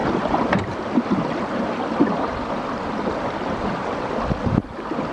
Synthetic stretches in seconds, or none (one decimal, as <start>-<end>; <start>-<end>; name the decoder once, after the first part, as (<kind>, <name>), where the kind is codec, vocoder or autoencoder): none